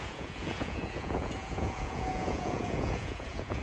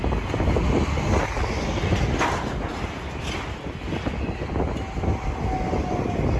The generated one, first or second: first